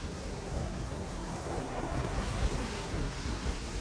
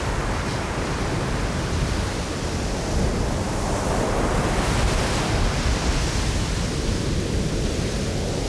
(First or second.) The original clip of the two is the second